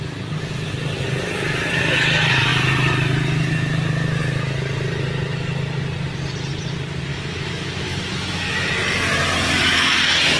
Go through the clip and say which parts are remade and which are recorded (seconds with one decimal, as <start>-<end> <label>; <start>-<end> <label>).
0.0-7.1 recorded; 7.1-8.7 remade; 8.7-10.4 recorded